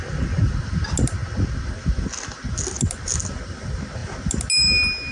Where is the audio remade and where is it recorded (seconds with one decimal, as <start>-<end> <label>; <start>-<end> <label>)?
0.0-5.1 recorded